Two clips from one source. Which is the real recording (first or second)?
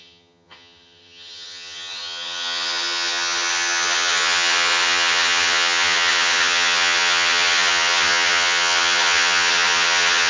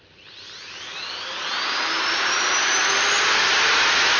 second